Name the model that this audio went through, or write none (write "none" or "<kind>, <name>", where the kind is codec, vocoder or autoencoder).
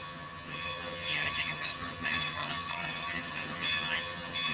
vocoder, HiFi-GAN